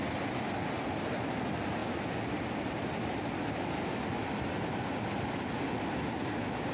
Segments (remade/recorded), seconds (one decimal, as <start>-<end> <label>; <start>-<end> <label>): 0.0-6.7 recorded